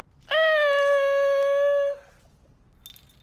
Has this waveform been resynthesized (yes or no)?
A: no